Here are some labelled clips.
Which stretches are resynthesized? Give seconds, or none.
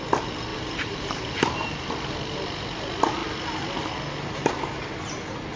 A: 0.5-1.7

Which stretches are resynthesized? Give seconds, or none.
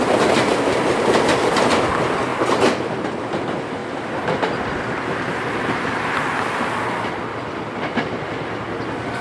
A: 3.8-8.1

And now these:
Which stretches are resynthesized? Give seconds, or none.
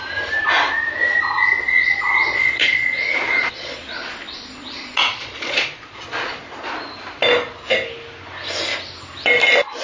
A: 1.6-6.4